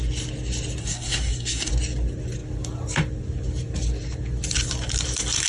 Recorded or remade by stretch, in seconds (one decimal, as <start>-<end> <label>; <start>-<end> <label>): 0.0-0.8 recorded; 0.8-1.7 remade; 1.7-5.5 recorded